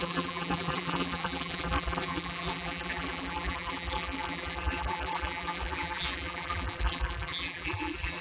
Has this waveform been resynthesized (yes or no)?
yes